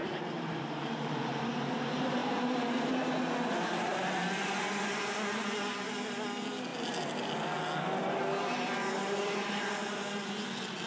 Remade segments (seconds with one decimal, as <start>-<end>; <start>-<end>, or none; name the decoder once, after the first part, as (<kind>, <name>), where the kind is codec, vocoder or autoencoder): 0.0-1.4 (vocoder, BigVGAN v2); 2.2-2.9